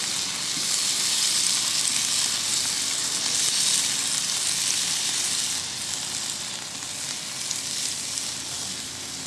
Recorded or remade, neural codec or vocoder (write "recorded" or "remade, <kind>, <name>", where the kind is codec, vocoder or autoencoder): recorded